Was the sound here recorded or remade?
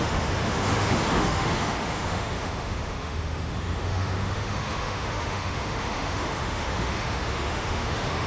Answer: remade